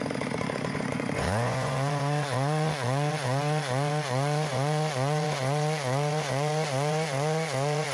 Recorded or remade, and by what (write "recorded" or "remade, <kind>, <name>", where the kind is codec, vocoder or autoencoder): remade, vocoder, Vocos